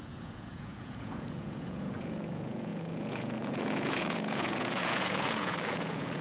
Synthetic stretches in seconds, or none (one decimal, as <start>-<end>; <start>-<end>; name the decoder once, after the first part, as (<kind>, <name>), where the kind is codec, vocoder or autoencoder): 0.0-6.2 (vocoder, Vocos)